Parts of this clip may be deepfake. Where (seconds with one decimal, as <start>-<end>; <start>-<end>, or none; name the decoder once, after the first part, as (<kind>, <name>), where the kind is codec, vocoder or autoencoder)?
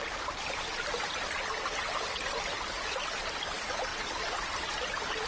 none